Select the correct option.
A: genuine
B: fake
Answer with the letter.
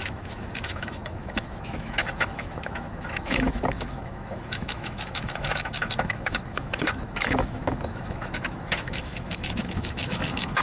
B